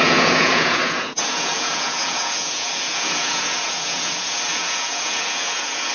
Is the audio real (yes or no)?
no